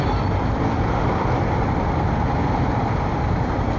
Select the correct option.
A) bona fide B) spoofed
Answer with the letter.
A